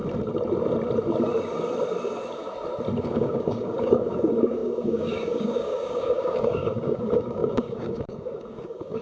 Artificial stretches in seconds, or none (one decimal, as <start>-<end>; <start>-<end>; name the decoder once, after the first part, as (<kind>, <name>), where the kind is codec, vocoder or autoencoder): 3.0-9.0 (codec, DAC)